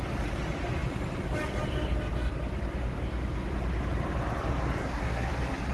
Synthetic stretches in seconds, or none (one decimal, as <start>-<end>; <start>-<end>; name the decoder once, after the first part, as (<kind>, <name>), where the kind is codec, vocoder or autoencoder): 4.8-5.3 (codec, SNAC)